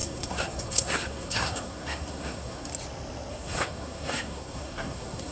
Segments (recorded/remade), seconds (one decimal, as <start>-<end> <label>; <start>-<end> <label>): 0.0-2.7 remade; 2.7-3.3 recorded; 3.3-5.3 remade

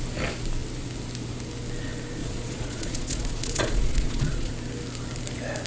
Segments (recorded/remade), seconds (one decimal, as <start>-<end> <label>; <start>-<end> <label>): 0.0-2.2 recorded; 2.2-4.5 remade; 4.5-5.7 recorded

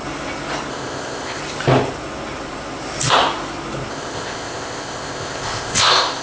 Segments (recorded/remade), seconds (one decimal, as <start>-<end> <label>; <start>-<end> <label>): 0.0-0.7 recorded; 0.7-1.4 remade; 1.4-3.9 recorded; 3.9-6.2 remade

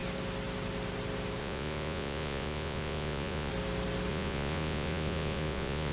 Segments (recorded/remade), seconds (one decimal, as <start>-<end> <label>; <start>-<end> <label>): 0.0-1.4 recorded; 1.4-3.5 remade; 3.5-4.1 recorded; 4.1-5.9 remade